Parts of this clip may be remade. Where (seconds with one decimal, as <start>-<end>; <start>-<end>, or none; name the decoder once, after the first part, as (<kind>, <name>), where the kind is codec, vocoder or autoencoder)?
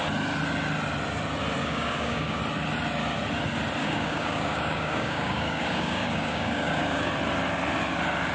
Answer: 1.6-2.4 (codec, DAC); 3.8-7.1